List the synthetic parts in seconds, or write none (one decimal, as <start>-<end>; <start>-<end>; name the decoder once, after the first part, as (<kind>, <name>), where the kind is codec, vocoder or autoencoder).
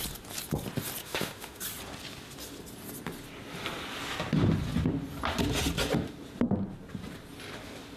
1.0-1.6 (autoencoder, DAC-VAE)